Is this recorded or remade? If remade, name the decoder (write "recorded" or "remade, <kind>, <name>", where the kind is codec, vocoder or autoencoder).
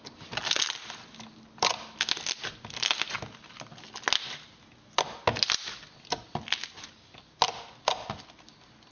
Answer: recorded